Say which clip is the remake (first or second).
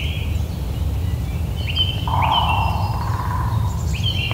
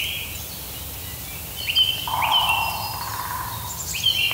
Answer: first